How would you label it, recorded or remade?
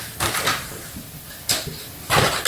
recorded